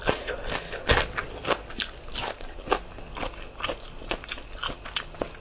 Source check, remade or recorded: recorded